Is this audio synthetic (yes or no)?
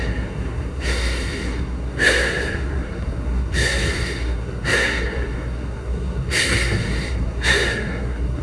yes